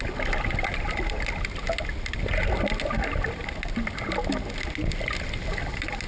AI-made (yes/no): no